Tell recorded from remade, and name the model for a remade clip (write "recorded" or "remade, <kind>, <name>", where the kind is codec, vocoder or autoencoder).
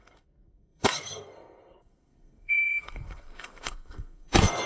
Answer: remade, codec, SNAC